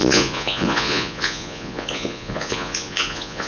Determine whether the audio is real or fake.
fake